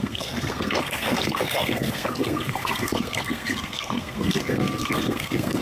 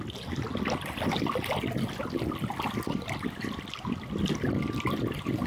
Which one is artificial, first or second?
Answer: first